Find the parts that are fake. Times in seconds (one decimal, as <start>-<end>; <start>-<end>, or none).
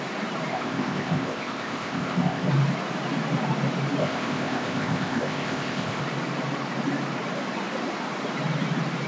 0.5-2.5; 4.0-6.0